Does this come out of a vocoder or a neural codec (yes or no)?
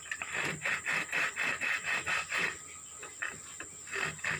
no